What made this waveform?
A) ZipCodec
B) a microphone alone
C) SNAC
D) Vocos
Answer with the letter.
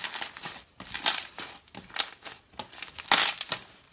B